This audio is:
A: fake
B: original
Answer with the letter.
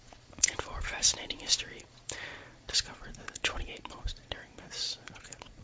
A